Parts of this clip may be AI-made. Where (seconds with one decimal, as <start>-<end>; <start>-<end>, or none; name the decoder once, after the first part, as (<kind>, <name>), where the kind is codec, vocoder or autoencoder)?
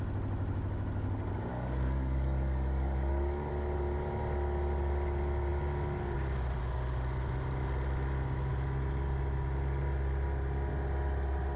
1.5-3.5 (codec, DAC)